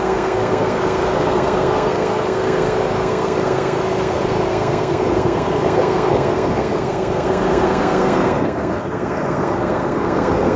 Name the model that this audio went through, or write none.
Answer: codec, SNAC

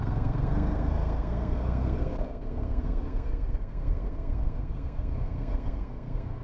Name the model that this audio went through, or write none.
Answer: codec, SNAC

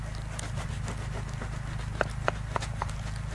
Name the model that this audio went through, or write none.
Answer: none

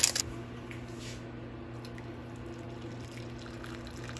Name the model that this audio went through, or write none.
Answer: none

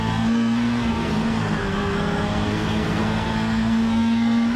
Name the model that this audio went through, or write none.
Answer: codec, SNAC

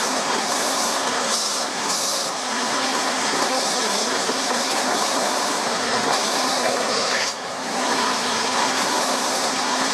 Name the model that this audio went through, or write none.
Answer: codec, SNAC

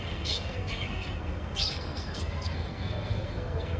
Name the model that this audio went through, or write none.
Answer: codec, SNAC